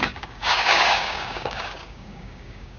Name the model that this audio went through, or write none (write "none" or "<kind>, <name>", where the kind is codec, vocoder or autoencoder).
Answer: codec, DAC